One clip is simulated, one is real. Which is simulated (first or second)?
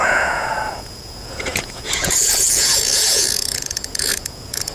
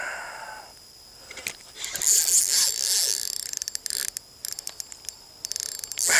first